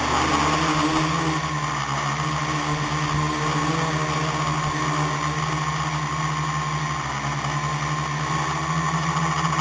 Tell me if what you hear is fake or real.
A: real